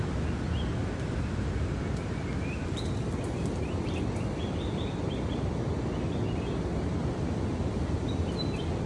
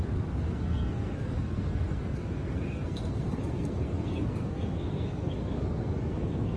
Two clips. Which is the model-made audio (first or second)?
second